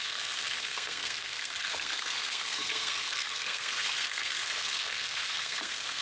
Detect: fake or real fake